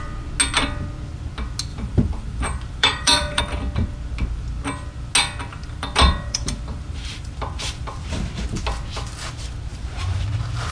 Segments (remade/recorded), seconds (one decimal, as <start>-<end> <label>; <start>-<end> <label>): 0.0-1.7 recorded; 1.7-3.4 remade; 3.4-5.5 recorded; 5.5-8.2 remade; 8.2-9.7 recorded; 9.7-10.2 remade; 10.2-10.7 recorded